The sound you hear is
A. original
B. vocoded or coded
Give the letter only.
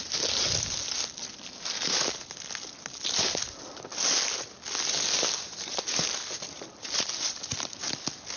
A